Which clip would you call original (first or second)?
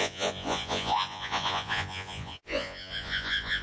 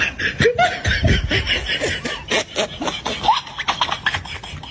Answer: second